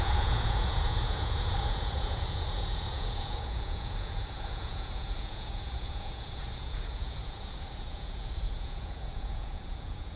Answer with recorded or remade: remade